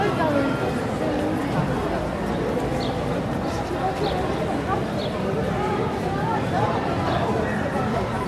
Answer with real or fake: real